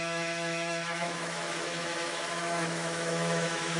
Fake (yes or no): yes